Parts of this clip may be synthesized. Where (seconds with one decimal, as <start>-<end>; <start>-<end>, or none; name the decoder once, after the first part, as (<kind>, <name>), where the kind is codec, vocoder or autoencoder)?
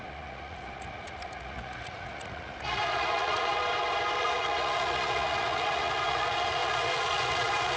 0.0-3.6 (vocoder, Vocos); 4.2-7.8